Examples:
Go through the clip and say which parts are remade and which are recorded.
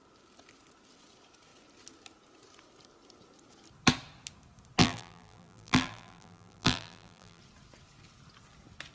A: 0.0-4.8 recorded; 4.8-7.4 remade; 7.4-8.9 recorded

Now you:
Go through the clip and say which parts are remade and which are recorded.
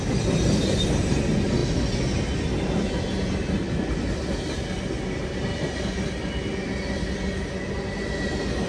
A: 0.0-8.7 recorded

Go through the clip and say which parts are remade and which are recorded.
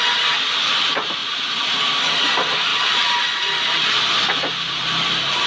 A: 0.0-5.5 remade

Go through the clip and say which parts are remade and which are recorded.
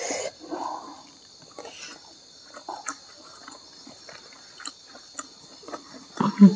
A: 0.0-0.6 recorded; 0.6-1.4 remade; 1.4-6.6 recorded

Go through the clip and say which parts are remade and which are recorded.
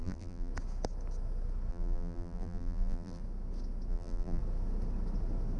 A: 0.0-0.5 remade; 0.5-1.7 recorded; 1.7-3.2 remade; 3.2-3.9 recorded; 3.9-4.4 remade; 4.4-5.6 recorded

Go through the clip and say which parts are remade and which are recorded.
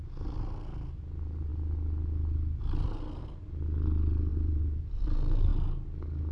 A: 0.0-4.3 recorded; 4.3-5.0 remade; 5.0-6.3 recorded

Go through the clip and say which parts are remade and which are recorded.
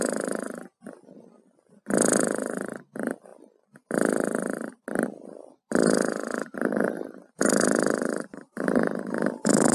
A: 0.0-9.7 recorded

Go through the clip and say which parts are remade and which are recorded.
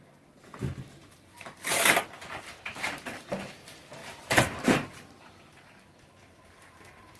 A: 0.0-1.3 remade; 1.3-2.6 recorded; 2.6-7.2 remade